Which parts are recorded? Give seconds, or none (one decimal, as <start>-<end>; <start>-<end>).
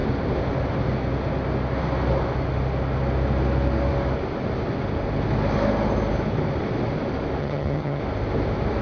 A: 0.0-7.4; 8.0-8.8